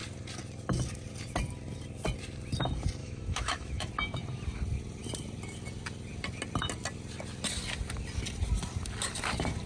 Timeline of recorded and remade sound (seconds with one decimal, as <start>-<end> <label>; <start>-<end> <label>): 0.0-3.0 recorded; 3.0-3.9 remade; 3.9-9.7 recorded